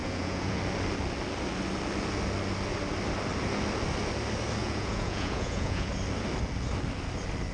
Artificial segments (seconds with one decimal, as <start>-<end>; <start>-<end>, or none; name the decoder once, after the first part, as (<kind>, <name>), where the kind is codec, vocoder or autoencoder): 0.0-0.6 (vocoder, Vocos); 4.6-5.9